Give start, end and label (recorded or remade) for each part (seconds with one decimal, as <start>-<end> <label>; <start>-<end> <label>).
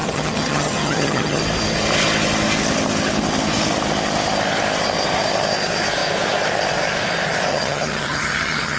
0.0-1.4 remade; 1.4-7.5 recorded; 7.5-8.8 remade